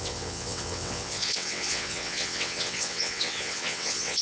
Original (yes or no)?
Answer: no